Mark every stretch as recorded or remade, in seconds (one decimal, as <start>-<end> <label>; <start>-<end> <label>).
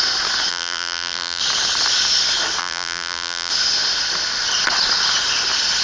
0.0-0.5 recorded; 0.5-1.4 remade; 1.4-2.6 recorded; 2.6-3.5 remade; 3.5-5.8 recorded